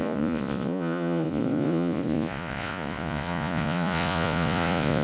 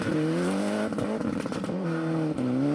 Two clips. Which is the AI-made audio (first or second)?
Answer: first